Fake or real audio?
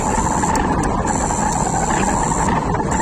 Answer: real